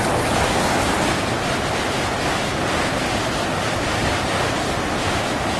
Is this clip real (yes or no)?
yes